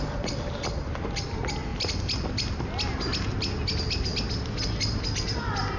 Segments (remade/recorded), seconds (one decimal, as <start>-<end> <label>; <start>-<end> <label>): 0.0-5.8 recorded